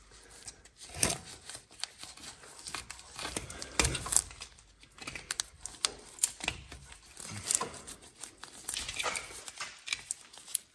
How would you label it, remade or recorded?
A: recorded